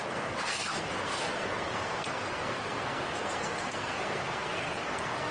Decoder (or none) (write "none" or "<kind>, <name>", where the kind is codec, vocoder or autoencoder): codec, SNAC